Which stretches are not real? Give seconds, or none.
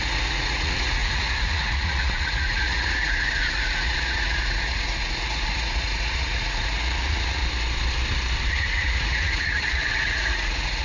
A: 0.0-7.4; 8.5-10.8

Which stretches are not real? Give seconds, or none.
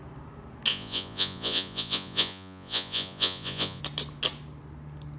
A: 0.7-3.8